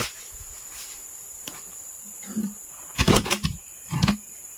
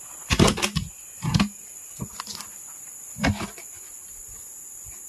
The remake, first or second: first